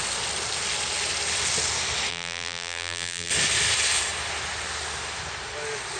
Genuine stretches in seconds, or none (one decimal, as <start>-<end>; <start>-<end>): 0.0-2.1; 3.3-6.0